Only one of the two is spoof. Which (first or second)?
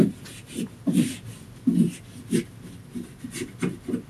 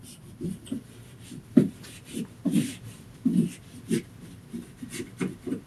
second